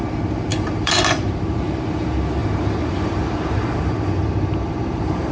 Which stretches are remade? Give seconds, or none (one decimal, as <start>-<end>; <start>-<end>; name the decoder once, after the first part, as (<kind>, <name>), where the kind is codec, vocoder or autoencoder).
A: 0.0-5.3 (vocoder, BigVGAN v2)